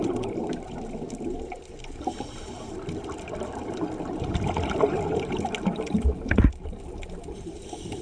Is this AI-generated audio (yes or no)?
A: no